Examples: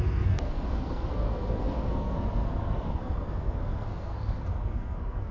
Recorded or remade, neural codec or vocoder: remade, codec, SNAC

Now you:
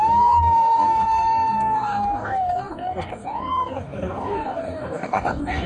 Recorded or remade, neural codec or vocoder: remade, codec, DAC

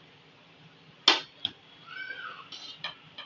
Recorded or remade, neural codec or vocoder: recorded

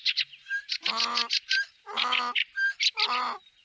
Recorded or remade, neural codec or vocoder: recorded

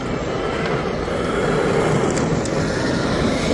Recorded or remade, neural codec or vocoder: recorded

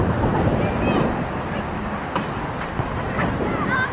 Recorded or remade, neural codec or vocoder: recorded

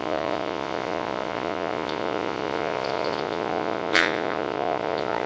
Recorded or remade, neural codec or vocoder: remade, vocoder, Vocos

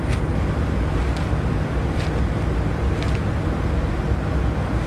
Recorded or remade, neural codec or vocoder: recorded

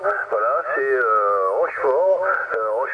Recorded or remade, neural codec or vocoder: recorded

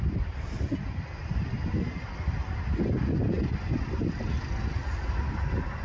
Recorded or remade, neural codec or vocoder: recorded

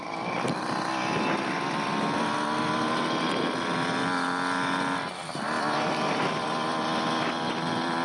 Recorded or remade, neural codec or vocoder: recorded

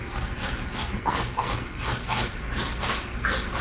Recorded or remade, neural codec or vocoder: remade, codec, SNAC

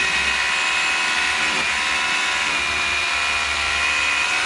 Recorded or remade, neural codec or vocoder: recorded